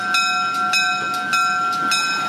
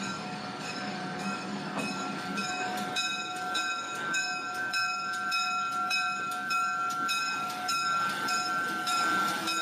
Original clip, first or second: first